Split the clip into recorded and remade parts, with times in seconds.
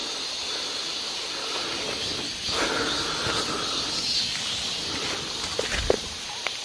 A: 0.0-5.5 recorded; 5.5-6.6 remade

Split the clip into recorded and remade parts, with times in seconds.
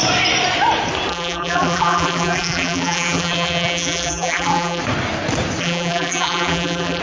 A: 0.0-1.1 recorded; 1.1-4.8 remade; 4.8-5.6 recorded; 5.6-7.0 remade